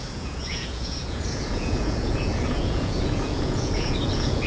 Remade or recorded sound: remade